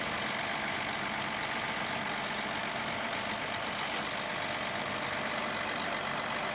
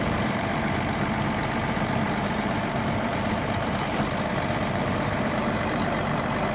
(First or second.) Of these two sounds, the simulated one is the second